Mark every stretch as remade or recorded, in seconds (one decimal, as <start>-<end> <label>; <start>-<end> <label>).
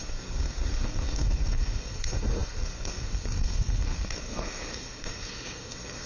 0.0-6.1 remade